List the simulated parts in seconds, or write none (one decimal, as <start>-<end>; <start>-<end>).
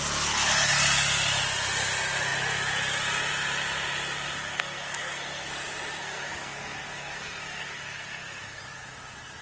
4.4-5.5; 6.0-8.6